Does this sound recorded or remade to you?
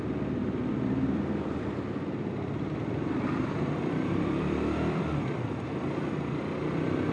remade